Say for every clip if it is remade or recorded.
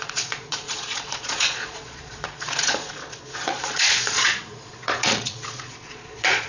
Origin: remade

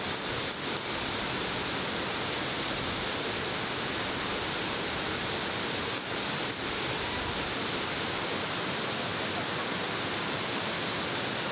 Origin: recorded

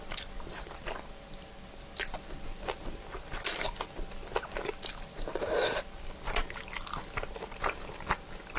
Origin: recorded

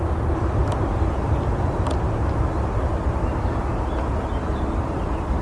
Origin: recorded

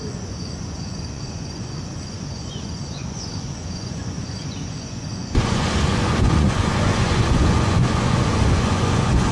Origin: remade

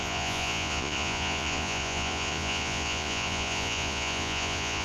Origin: remade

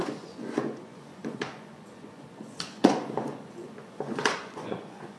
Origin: remade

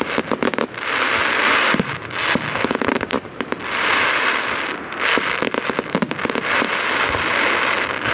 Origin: recorded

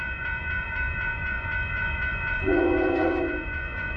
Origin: remade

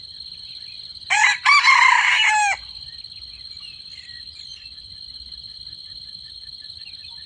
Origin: recorded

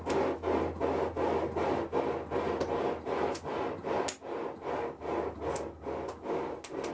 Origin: recorded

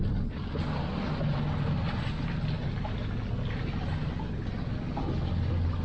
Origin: recorded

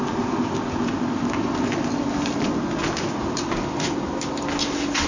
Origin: recorded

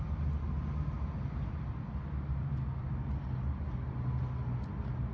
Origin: recorded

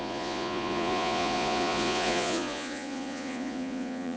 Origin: remade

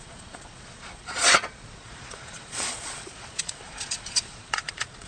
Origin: remade